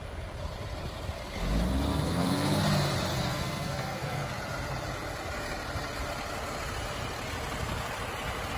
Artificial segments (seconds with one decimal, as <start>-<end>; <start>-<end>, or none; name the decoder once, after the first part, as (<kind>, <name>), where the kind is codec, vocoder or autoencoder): 1.9-2.6 (codec, SNAC); 3.1-4.3